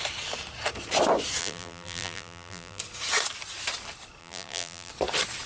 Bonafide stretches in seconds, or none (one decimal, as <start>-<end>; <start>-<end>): 0.0-1.4; 2.8-4.2; 4.9-5.5